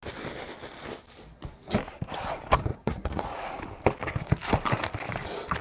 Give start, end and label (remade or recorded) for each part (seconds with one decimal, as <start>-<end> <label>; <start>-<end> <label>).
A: 0.0-2.7 recorded; 2.7-3.6 remade; 3.6-5.6 recorded